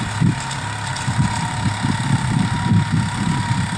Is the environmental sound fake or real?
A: fake